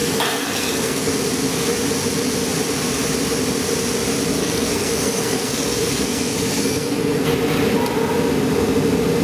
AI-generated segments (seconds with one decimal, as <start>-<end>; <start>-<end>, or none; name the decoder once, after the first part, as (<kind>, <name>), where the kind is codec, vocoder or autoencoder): 0.0-1.1 (codec, SNAC); 4.4-7.3